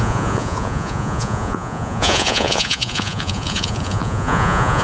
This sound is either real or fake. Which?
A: fake